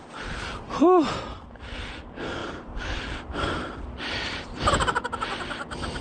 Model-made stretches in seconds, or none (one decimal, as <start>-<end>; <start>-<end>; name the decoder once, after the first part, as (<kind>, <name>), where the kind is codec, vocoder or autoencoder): none